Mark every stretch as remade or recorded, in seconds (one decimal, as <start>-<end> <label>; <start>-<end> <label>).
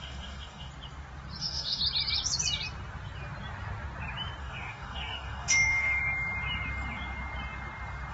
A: 0.0-0.7 remade; 0.7-1.4 recorded; 1.4-1.8 remade; 1.8-4.4 recorded; 4.4-6.0 remade; 6.0-8.1 recorded